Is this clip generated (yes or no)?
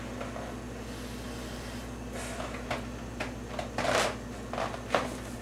no